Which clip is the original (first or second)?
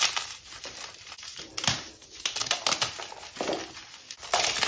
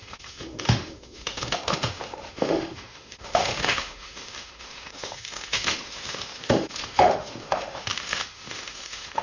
first